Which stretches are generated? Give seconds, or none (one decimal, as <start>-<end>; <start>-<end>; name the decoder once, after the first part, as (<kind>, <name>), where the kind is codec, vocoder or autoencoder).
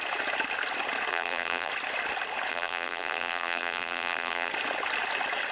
1.1-1.7 (vocoder, BigVGAN v2); 2.5-4.5